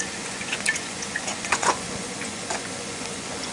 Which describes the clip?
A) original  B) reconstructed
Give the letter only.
B